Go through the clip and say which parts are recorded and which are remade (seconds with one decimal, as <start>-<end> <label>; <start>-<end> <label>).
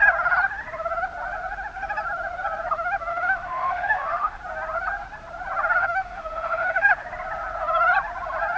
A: 0.0-3.1 recorded; 3.1-4.4 remade; 4.4-5.8 recorded; 5.8-6.9 remade; 6.9-8.6 recorded